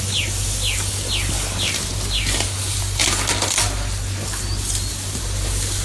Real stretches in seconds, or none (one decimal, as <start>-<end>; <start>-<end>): 0.0-5.8